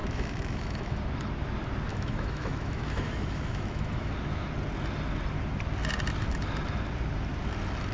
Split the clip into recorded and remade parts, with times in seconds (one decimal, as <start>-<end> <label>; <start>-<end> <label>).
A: 0.0-1.0 remade; 1.0-1.9 recorded; 1.9-4.1 remade; 4.1-7.9 recorded